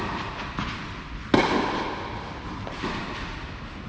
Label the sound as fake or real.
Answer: real